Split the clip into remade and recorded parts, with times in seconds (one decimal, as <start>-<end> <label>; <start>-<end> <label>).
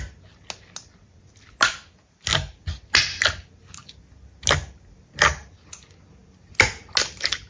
0.0-7.5 recorded